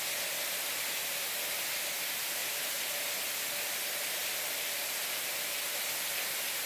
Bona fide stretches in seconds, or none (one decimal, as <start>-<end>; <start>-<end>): 0.0-1.0; 1.6-2.4; 3.1-6.7

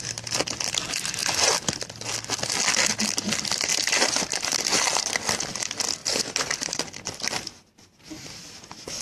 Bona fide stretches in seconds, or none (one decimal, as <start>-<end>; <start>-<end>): 0.0-3.7; 4.9-6.0; 6.8-9.0

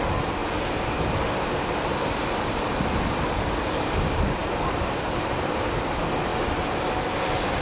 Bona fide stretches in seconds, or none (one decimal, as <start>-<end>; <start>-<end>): 0.4-2.0; 6.3-6.9